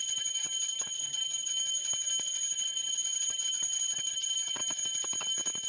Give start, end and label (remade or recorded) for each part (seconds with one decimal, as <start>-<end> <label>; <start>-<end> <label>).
0.0-1.5 remade; 1.5-2.5 recorded; 2.5-4.6 remade; 4.6-5.7 recorded